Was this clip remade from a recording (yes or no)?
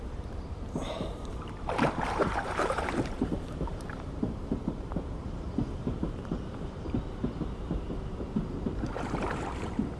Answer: yes